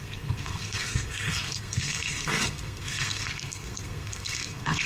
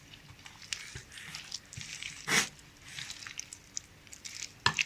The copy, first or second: first